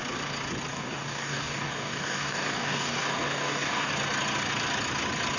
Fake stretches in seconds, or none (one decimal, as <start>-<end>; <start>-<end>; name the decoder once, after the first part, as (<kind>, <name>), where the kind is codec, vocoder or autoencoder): 0.7-3.9 (codec, DAC)